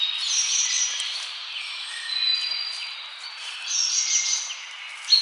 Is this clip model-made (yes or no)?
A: no